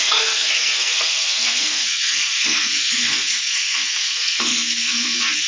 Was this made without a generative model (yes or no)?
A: no